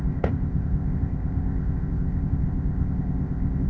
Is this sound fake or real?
fake